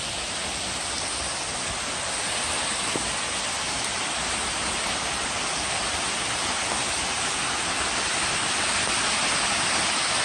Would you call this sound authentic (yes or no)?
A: yes